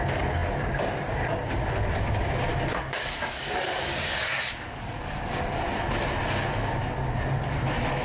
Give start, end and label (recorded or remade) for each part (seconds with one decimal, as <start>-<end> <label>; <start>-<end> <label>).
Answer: 0.0-2.5 recorded; 2.5-5.5 remade; 5.5-8.0 recorded